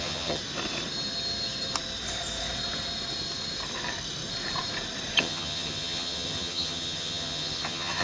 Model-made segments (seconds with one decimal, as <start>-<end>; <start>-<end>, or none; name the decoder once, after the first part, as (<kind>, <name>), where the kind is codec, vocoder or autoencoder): 0.0-0.4 (vocoder, HiFi-GAN); 5.2-8.0